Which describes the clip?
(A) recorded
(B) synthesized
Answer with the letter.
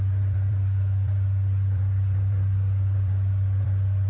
A